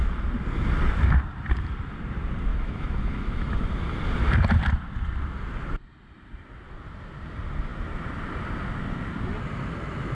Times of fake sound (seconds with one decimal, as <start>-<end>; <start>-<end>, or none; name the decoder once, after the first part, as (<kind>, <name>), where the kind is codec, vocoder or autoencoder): 2.5-3.7 (autoencoder, DAC-VAE)